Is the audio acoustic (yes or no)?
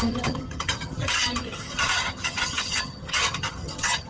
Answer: no